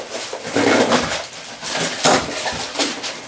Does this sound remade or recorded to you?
recorded